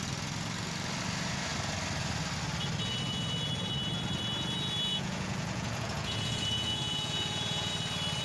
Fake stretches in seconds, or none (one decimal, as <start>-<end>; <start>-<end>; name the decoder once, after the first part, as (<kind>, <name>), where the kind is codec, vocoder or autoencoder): 4.9-7.7 (vocoder, Vocos)